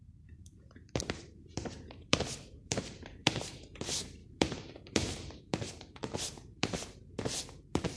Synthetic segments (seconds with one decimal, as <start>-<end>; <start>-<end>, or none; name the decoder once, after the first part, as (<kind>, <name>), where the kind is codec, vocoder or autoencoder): 0.0-8.0 (vocoder, BigVGAN v2)